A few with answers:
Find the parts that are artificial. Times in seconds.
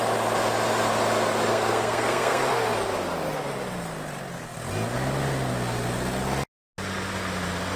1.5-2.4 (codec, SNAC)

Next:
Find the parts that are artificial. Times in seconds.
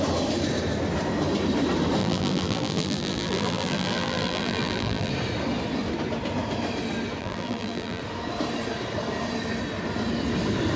2.0-5.1 (vocoder, BigVGAN v2); 7.2-8.0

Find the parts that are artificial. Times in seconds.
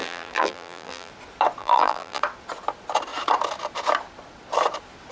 0.0-1.1 (vocoder, BigVGAN v2); 1.6-2.2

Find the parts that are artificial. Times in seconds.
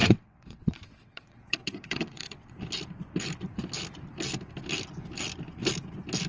0.0-2.5 (vocoder, WaveNeXt)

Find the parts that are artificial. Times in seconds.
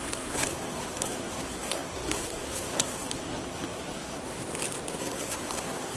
0.0-4.4 (codec, SNAC); 4.9-6.0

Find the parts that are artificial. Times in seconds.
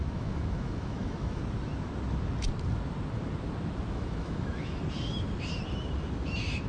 0.0-1.4 (autoencoder, DAC-VAE); 3.9-4.8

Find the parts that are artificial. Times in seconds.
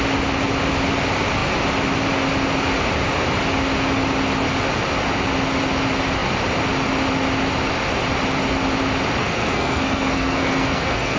9.2-11.2 (codec, SNAC)